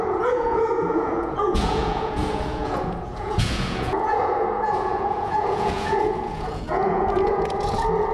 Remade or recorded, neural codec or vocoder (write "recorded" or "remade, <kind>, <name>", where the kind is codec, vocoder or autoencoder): remade, vocoder, Vocos